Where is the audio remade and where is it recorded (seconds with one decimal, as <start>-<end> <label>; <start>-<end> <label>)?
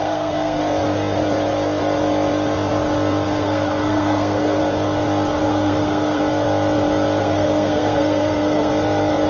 0.0-0.6 remade; 0.6-3.4 recorded; 3.4-4.6 remade; 4.6-5.4 recorded; 5.4-6.2 remade; 6.2-7.2 recorded; 7.2-8.7 remade; 8.7-9.3 recorded